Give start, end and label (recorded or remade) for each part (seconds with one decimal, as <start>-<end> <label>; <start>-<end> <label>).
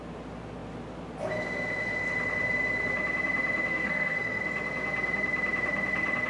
0.0-3.7 recorded; 3.7-4.4 remade; 4.4-6.3 recorded